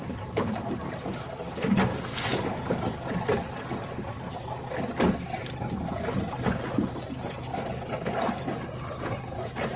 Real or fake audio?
real